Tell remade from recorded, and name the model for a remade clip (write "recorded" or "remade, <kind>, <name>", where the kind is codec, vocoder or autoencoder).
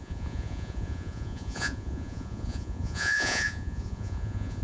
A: remade, vocoder, Vocos